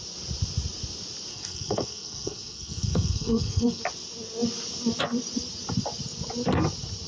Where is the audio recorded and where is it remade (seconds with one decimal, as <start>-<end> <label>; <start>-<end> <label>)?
0.0-1.3 recorded; 1.3-3.8 remade; 3.8-7.1 recorded